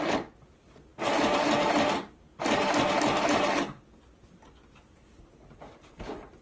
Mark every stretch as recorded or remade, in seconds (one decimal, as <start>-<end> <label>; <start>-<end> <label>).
0.0-6.4 recorded